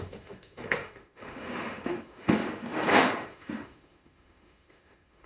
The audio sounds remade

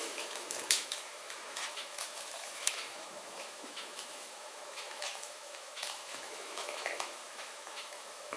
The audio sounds remade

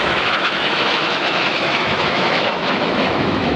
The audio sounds remade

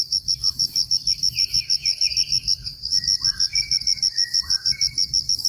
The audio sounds recorded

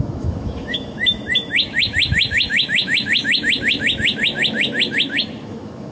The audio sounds remade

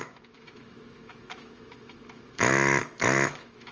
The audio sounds remade